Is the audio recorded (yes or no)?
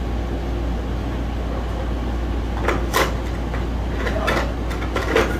yes